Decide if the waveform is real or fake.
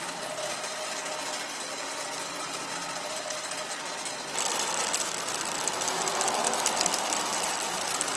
real